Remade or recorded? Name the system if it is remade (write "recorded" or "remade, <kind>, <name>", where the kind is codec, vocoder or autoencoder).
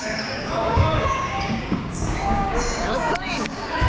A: remade, codec, DAC